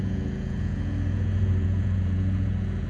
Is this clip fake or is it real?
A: fake